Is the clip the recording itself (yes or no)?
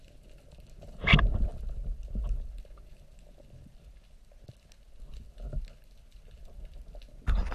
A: yes